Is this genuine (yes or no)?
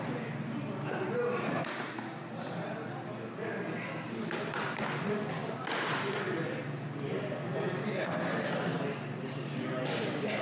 yes